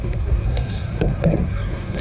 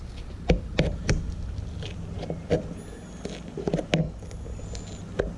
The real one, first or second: second